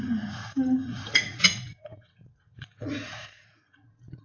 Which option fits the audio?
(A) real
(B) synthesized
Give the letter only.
B